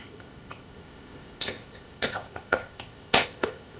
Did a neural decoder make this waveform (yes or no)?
yes